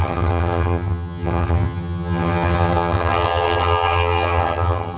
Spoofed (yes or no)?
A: yes